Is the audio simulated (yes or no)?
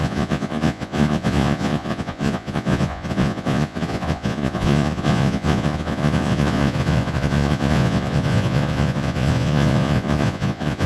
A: yes